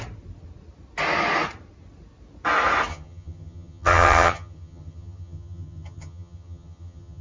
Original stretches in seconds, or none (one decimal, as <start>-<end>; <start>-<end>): 0.0-2.9